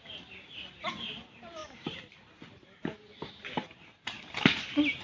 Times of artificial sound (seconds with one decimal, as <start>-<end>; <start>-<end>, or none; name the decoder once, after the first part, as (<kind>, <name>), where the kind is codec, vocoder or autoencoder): none